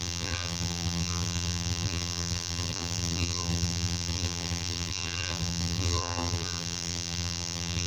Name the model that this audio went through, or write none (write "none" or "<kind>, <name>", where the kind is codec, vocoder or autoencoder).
vocoder, BigVGAN v2